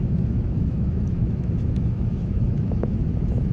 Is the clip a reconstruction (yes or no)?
yes